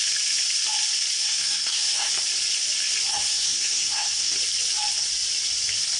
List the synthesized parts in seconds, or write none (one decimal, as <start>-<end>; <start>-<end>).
1.2-2.1; 3.1-4.3